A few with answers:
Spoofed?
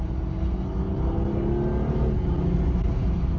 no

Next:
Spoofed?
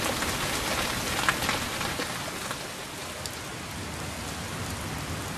no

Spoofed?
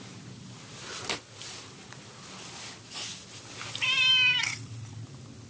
no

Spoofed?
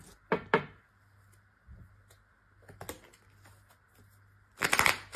no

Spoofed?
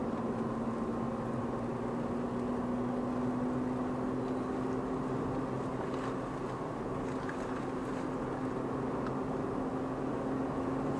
no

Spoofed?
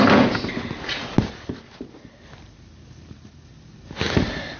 no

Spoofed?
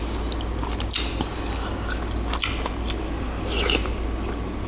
no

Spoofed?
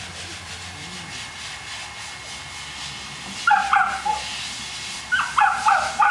no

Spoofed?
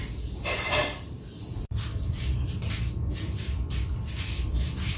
yes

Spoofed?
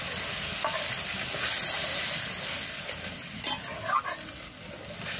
no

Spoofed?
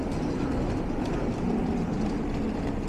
no